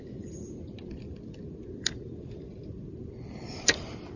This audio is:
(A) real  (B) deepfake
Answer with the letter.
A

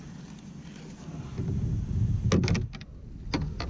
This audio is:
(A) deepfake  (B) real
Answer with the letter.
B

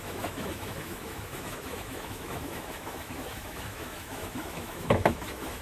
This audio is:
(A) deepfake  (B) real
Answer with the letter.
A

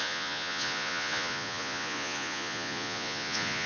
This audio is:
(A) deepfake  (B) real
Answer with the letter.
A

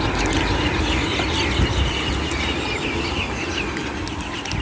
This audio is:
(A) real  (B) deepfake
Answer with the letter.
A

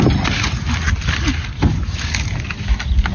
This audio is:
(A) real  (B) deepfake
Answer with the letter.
A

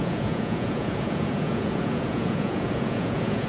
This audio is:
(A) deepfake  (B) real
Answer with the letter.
A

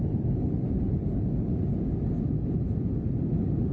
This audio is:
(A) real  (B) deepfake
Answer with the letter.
A